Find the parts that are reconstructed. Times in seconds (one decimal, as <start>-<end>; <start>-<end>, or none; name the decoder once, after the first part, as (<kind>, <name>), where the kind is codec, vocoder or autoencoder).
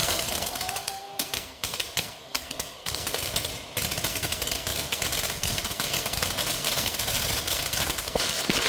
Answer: 0.0-3.5 (codec, SNAC); 4.1-8.7